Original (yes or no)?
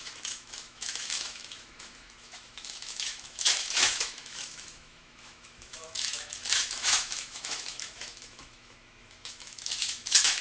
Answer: no